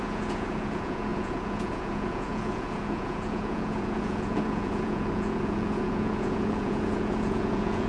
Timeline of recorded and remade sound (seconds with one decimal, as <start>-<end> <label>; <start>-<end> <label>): 0.0-7.9 remade